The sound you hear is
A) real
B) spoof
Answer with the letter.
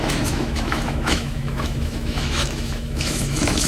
B